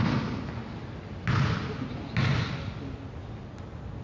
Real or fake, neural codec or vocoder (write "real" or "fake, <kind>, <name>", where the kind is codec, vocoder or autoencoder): real